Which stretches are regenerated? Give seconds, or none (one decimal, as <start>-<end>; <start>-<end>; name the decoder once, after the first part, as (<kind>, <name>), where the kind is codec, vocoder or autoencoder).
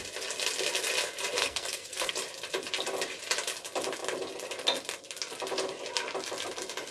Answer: 1.4-2.1 (codec, SNAC)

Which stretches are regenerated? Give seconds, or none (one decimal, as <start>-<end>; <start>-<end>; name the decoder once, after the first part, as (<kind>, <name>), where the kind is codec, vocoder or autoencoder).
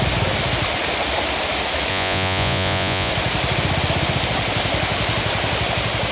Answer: 1.9-3.1 (vocoder, Vocos)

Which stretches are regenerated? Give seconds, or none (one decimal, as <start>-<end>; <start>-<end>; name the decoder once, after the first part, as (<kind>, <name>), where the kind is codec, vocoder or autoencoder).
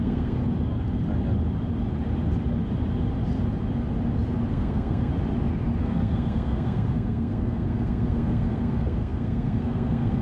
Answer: 0.0-0.4 (codec, SNAC); 4.5-5.1; 5.8-10.2